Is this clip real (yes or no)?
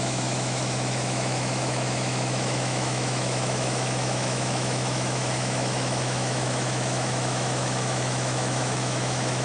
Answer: no